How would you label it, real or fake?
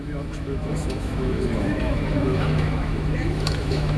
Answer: fake